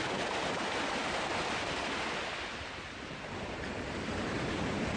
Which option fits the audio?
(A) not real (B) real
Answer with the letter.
B